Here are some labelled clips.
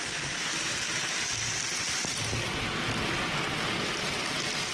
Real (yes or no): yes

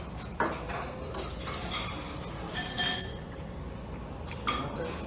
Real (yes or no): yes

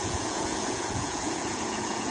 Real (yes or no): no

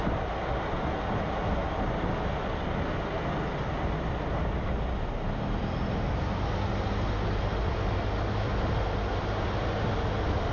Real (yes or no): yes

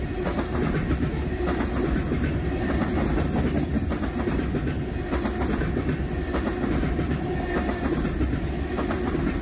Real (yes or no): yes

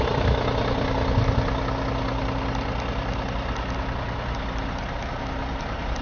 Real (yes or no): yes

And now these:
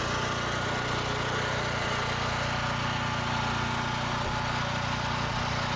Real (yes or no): yes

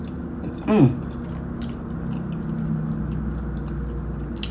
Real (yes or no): yes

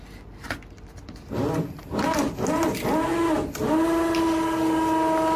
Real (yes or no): yes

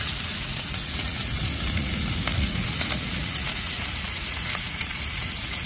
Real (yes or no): no